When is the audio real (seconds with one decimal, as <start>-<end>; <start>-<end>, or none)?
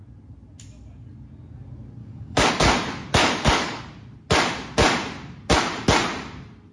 0.0-2.0; 2.5-3.2; 3.8-6.7